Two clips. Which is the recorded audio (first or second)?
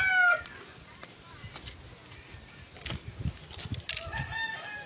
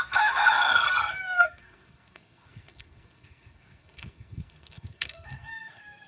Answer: first